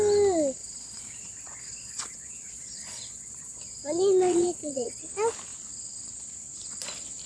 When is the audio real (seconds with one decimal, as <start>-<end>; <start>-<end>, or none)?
0.0-0.6; 5.0-7.3